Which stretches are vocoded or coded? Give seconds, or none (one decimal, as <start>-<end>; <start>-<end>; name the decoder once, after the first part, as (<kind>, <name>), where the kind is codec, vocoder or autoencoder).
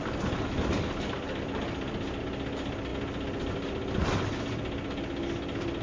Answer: none